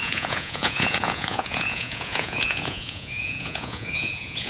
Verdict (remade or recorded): remade